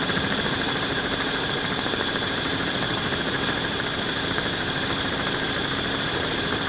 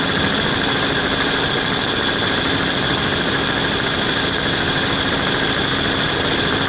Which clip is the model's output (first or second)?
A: first